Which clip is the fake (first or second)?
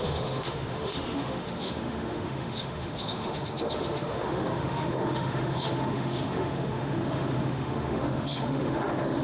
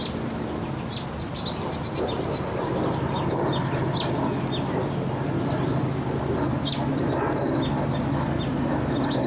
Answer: first